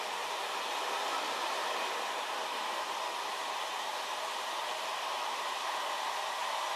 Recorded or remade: recorded